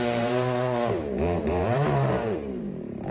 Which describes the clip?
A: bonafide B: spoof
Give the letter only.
B